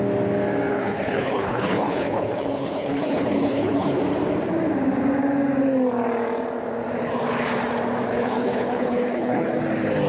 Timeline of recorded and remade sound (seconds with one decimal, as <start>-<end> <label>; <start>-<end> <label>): 0.0-0.7 recorded; 0.7-4.0 remade; 4.0-8.1 recorded; 8.1-9.5 remade; 9.5-10.1 recorded